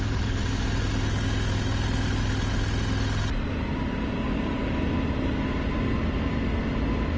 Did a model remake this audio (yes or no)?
no